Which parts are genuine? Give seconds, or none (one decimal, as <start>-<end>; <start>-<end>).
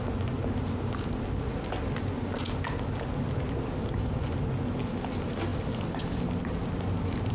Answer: 0.0-7.3